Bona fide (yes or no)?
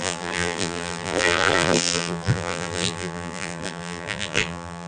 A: no